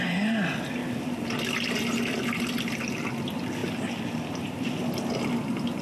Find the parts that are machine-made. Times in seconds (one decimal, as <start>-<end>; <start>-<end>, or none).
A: none

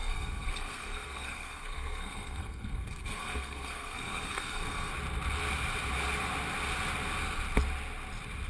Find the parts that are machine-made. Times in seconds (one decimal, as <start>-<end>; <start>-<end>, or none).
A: 0.0-4.9